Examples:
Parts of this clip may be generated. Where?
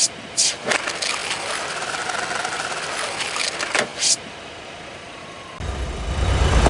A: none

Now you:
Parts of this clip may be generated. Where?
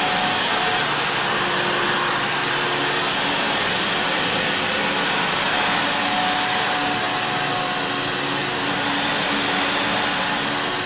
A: none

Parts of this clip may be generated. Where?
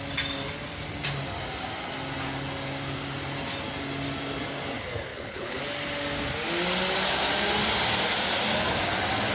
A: 5.1-5.6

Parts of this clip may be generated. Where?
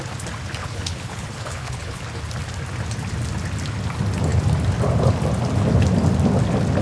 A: 0.6-2.0